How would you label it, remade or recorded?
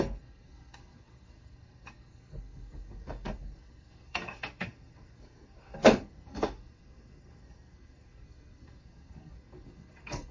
remade